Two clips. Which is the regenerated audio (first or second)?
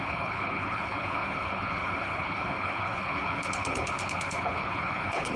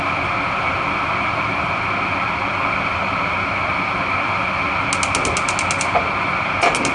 first